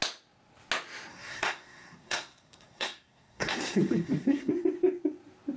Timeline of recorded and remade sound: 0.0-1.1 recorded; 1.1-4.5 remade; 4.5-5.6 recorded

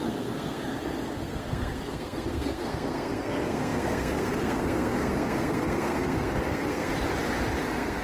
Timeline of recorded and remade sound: 0.0-6.9 remade; 6.9-7.6 recorded; 7.6-8.0 remade

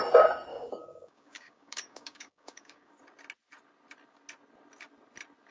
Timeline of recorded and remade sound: 0.0-0.5 recorded; 0.5-2.9 remade; 2.9-5.5 recorded

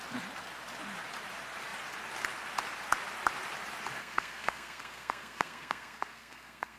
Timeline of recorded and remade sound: 0.0-4.0 recorded; 4.0-6.8 remade

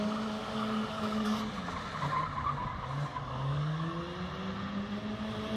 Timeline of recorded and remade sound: 0.0-0.4 recorded; 0.4-1.5 remade; 1.5-3.1 recorded; 3.1-3.9 remade; 3.9-5.6 recorded